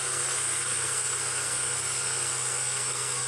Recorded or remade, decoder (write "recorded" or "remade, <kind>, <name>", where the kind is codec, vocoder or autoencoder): remade, codec, SNAC